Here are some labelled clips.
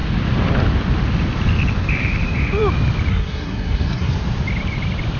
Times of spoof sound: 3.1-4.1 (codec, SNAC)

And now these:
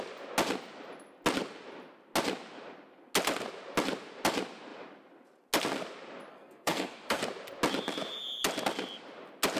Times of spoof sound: 6.3-7.2 (codec, SNAC)

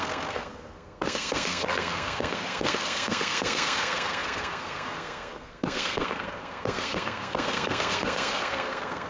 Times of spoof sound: 0.0-9.1 (codec, SNAC)